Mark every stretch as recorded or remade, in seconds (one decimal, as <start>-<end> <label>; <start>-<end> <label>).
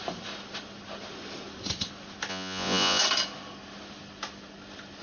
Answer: 0.0-2.3 recorded; 2.3-3.0 remade; 3.0-5.0 recorded